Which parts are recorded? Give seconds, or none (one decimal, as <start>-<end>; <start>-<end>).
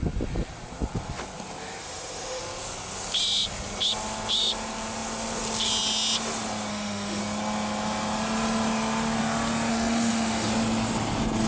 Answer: 0.0-1.8; 2.4-6.7; 7.2-9.7; 10.5-11.5